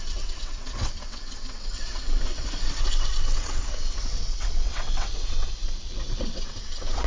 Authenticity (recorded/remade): remade